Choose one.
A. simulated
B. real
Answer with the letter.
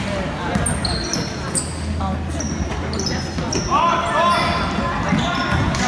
B